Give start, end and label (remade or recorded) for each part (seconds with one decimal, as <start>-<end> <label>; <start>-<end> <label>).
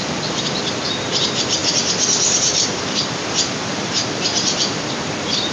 0.0-0.6 remade; 0.6-1.6 recorded; 1.6-4.9 remade; 4.9-5.5 recorded